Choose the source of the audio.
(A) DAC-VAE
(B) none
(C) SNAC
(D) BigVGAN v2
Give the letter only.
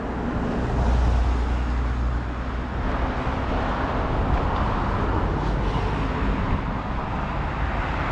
B